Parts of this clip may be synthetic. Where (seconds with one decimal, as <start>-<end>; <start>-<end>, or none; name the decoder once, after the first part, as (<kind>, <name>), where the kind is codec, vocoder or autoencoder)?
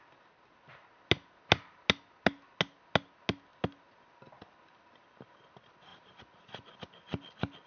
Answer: 5.9-6.8 (vocoder, BigVGAN v2)